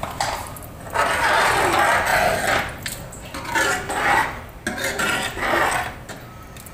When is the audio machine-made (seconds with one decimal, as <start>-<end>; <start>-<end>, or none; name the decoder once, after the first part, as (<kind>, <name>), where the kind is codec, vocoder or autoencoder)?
none